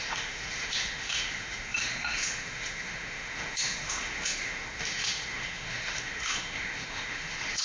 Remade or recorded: remade